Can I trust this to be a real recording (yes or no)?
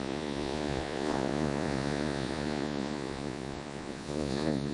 no